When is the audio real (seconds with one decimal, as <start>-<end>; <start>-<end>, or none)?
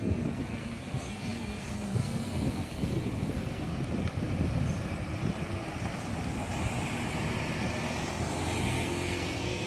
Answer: 3.7-8.6